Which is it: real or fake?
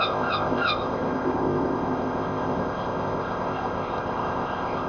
fake